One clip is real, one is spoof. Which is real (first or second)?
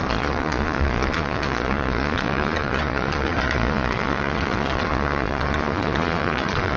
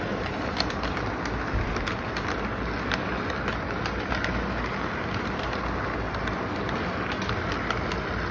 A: second